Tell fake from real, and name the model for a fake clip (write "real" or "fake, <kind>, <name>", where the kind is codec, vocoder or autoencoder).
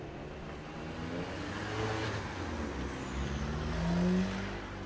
real